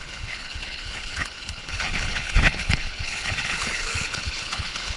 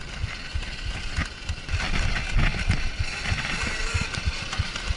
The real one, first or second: second